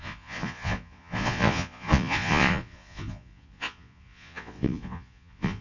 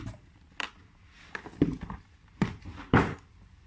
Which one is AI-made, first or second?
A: first